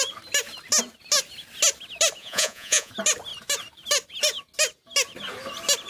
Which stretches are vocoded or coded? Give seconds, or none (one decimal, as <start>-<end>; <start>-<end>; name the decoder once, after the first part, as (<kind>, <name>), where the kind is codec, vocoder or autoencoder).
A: 2.2-2.9 (vocoder, Vocos)